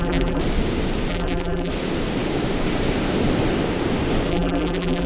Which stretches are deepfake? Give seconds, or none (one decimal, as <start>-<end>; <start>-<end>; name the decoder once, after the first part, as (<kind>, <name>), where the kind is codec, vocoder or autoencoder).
0.0-0.4 (vocoder, BigVGAN v2); 1.1-1.7; 4.3-5.1